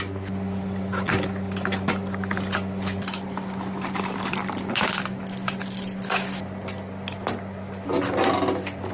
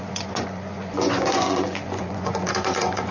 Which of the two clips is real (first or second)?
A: first